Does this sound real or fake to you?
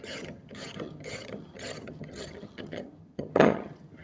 fake